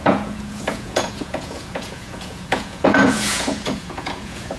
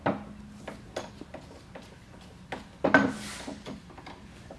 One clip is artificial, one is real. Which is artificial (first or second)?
first